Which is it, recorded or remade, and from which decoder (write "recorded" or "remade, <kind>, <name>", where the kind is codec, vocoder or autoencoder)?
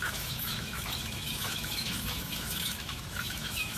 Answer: remade, autoencoder, DAC-VAE